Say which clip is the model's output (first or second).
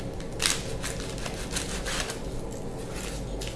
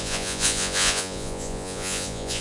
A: second